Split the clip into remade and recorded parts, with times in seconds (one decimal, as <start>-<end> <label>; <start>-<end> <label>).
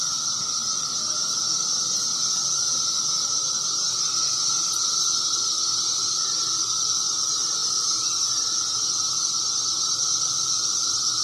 0.0-11.2 recorded